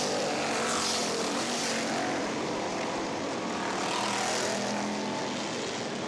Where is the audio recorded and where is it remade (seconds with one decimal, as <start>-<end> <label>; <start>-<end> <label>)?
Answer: 0.0-1.0 recorded; 1.0-3.4 remade; 3.4-6.1 recorded